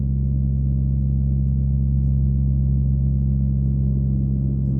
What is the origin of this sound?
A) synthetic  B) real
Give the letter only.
B